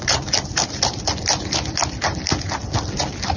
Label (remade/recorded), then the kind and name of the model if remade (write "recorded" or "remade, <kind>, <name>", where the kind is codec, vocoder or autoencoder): remade, vocoder, BigVGAN v2